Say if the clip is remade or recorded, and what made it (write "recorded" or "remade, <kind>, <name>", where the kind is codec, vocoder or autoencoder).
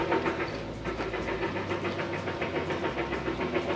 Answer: recorded